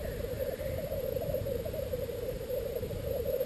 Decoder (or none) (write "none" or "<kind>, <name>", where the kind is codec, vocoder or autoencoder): vocoder, BigVGAN v2